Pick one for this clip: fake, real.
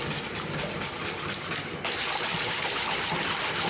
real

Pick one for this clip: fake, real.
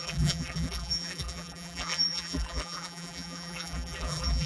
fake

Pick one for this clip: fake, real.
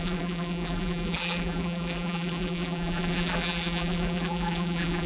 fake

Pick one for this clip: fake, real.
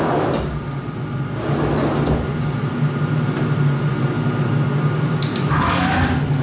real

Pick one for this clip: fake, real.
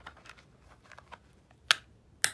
real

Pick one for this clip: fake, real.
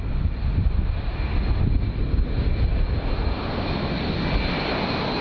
real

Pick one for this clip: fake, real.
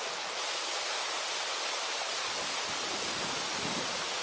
real